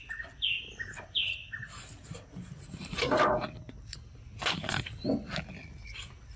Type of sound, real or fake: real